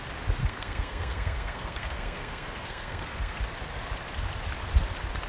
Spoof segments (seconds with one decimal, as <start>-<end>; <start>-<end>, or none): 0.4-3.4